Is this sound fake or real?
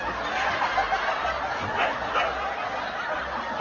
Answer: real